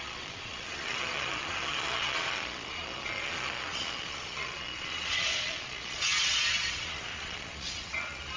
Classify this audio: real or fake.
fake